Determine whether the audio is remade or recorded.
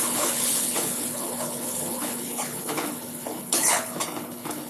remade